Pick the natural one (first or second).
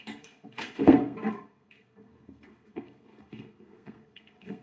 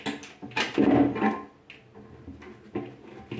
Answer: second